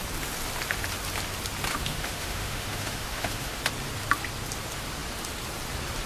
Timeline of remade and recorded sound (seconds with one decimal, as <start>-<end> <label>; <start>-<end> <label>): 0.0-1.7 recorded; 1.7-3.6 remade; 3.6-6.1 recorded